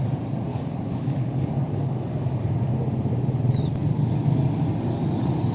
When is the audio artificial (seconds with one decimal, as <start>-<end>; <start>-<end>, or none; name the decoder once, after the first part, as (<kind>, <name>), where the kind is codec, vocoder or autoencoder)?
0.5-2.5 (codec, DAC)